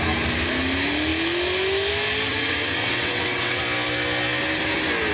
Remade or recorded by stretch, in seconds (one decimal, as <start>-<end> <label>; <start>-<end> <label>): 0.0-2.3 recorded; 2.3-3.6 remade; 3.6-5.1 recorded